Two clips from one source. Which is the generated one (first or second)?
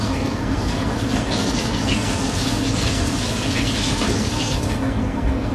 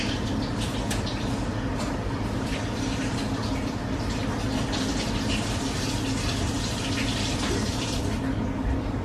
first